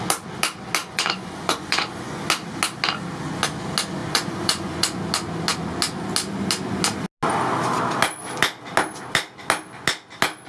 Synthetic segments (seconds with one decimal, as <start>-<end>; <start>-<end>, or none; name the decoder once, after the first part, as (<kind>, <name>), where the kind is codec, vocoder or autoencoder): 0.8-2.2 (vocoder, Vocos); 4.0-5.0